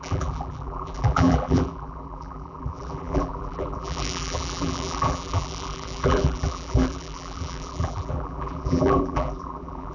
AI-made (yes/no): yes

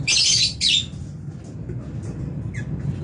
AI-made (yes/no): no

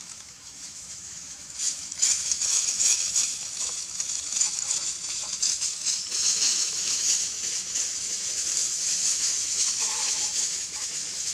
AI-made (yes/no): yes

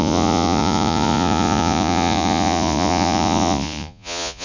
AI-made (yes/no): yes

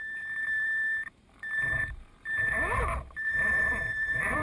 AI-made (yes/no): yes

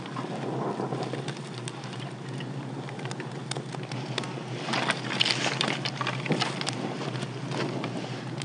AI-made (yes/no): no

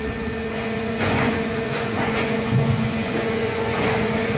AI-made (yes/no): yes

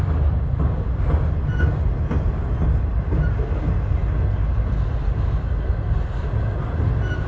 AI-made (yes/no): no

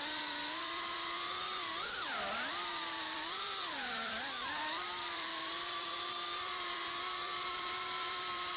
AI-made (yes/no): yes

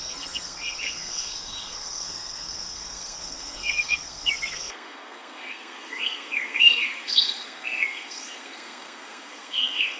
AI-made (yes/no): yes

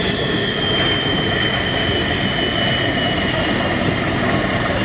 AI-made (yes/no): no